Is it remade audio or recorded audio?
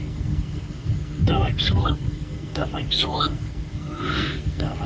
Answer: remade